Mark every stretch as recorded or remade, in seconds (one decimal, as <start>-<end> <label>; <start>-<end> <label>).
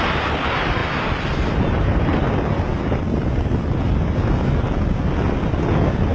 0.0-0.8 remade; 0.8-1.5 recorded; 1.5-2.1 remade; 2.1-6.1 recorded